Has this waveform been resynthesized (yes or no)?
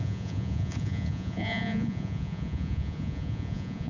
yes